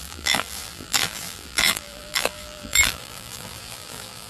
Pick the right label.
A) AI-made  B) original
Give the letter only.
A